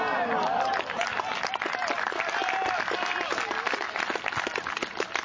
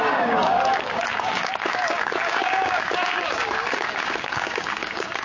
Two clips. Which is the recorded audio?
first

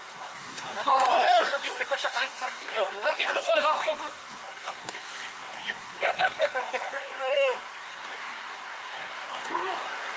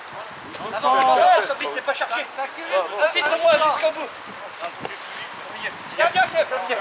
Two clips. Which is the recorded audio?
second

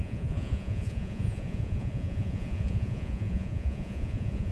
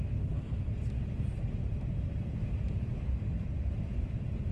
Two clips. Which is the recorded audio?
second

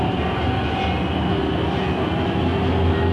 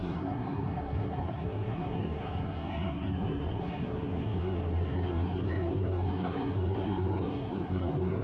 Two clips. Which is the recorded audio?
first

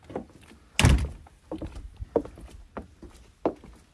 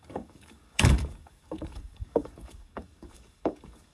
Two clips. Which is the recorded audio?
first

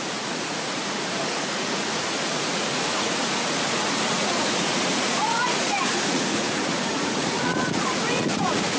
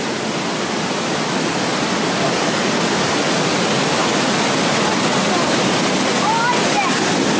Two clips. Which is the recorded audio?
second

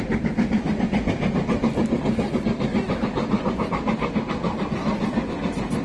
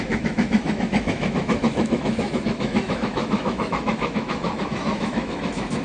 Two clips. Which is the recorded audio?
first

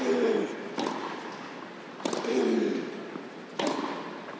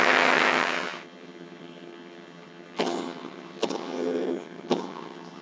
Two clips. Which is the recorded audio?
first